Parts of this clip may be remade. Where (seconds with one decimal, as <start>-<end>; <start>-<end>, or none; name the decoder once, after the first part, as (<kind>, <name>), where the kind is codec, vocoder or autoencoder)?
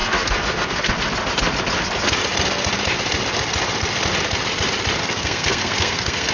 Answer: 0.0-0.9 (codec, SNAC); 5.0-6.3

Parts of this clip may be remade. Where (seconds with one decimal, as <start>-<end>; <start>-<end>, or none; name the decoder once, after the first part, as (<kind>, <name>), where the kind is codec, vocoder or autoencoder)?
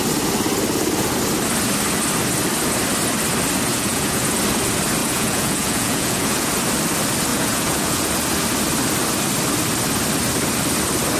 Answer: 3.7-4.4 (vocoder, Vocos); 5.0-6.5; 7.3-8.1